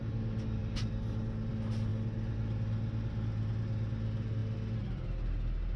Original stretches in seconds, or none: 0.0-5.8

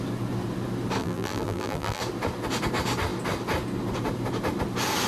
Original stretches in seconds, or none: 0.0-1.0; 2.0-5.1

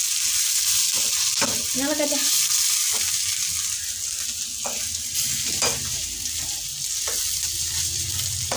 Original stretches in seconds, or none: 0.0-8.6